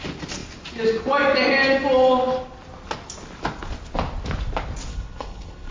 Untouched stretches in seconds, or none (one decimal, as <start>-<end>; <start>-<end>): 0.0-4.9

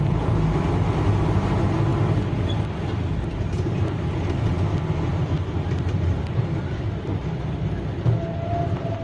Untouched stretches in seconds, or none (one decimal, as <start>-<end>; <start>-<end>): 0.0-9.0

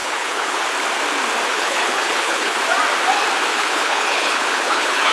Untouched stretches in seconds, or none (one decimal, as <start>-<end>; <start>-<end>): 0.6-1.5; 2.6-3.5

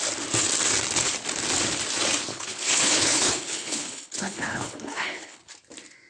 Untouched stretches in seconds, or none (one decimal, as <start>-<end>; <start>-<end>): 0.0-2.3; 5.5-6.1

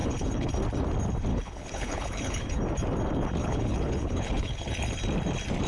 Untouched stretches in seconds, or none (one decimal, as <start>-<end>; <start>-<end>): 0.5-1.3; 2.6-3.4; 4.7-5.7

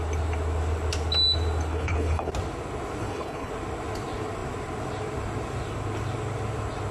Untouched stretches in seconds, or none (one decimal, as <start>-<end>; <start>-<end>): 0.0-1.7; 2.3-3.0; 3.5-6.9

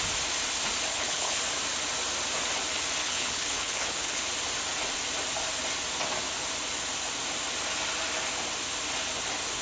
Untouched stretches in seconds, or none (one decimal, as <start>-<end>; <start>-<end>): 0.0-0.9; 1.4-3.0; 4.2-9.6